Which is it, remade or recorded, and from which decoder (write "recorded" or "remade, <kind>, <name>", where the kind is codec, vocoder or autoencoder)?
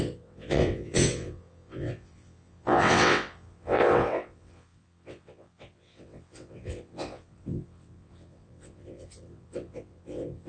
remade, vocoder, WaveNeXt